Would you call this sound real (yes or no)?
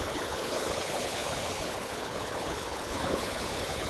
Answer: no